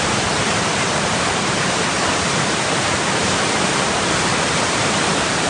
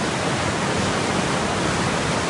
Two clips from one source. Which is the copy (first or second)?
first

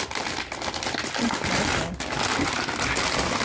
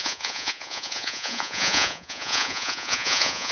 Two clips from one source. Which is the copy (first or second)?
second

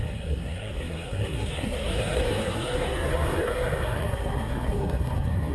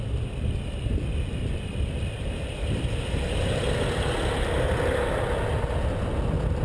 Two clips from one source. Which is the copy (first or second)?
first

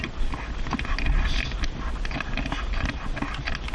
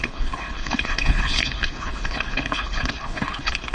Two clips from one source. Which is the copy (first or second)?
second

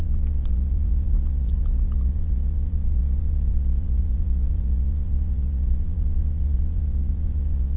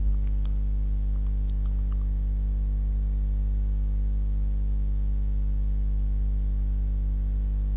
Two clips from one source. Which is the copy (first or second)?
first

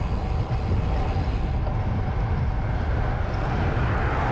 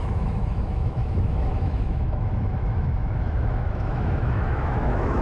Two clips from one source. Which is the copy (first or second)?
second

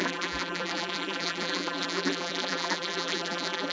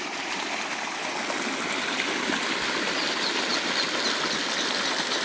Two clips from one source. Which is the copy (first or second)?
first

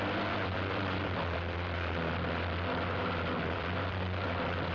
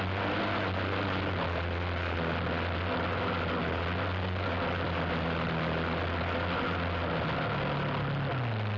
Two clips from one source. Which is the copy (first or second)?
first